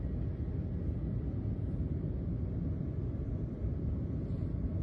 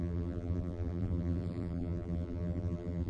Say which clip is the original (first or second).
first